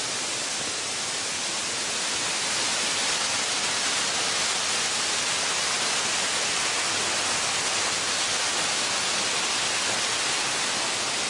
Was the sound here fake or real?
real